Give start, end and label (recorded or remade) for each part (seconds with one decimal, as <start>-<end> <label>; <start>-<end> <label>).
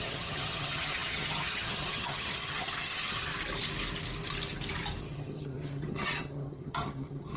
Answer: 0.0-3.3 remade; 3.3-5.0 recorded; 5.0-7.4 remade